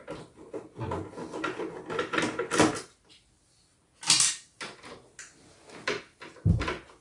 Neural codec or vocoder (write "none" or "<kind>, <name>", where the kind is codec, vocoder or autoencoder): none